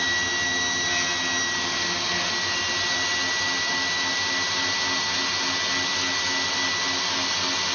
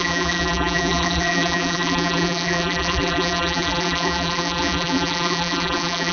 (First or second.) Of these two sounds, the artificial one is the second